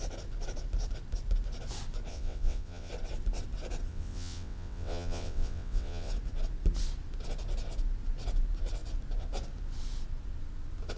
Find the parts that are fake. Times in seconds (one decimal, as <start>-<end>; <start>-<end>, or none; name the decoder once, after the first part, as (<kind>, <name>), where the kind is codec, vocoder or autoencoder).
2.1-2.9 (vocoder, WaveNeXt); 3.9-6.1